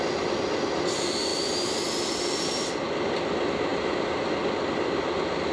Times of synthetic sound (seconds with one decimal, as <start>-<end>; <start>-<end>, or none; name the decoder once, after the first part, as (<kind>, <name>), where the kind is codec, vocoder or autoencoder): none